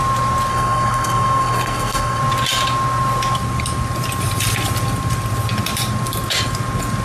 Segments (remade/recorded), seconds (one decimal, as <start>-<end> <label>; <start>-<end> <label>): 0.0-0.5 recorded; 0.5-2.2 remade; 2.2-7.0 recorded

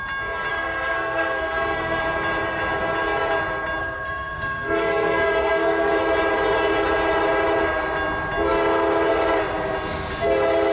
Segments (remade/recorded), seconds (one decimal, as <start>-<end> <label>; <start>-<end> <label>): 0.0-0.5 recorded; 0.5-2.0 remade; 2.0-3.8 recorded; 3.8-6.0 remade; 6.0-10.7 recorded

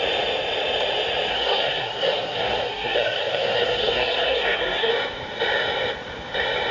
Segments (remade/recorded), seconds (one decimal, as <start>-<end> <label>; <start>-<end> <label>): 0.0-1.3 recorded; 1.3-4.9 remade; 4.9-6.7 recorded

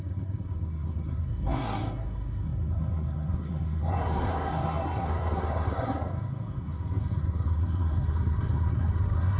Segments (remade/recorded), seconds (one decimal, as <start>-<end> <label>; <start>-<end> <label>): 0.0-9.4 remade

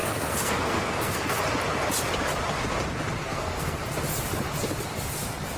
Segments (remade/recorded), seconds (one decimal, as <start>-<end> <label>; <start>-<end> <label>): 0.0-1.4 remade; 1.4-3.2 recorded; 3.2-3.8 remade; 3.8-5.6 recorded

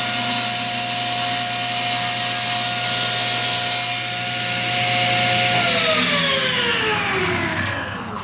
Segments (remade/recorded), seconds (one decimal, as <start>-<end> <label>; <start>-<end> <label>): 0.0-7.2 recorded; 7.2-8.2 remade

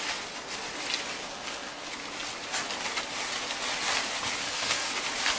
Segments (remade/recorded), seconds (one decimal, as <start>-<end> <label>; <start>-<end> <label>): 0.0-1.3 recorded; 1.3-1.9 remade; 1.9-4.4 recorded; 4.4-4.9 remade; 4.9-5.4 recorded

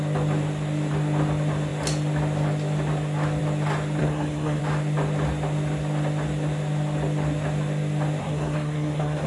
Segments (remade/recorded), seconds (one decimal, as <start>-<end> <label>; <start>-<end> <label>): 0.0-4.0 recorded; 4.0-4.6 remade; 4.6-8.2 recorded; 8.2-9.3 remade